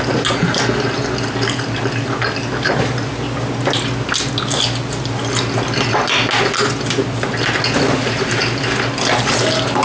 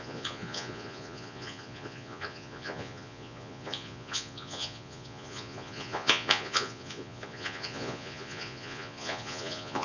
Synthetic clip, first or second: second